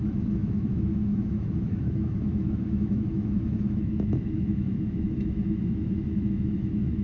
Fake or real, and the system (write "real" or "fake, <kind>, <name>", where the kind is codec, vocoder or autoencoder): fake, autoencoder, DAC-VAE